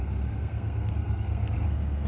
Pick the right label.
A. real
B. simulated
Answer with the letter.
B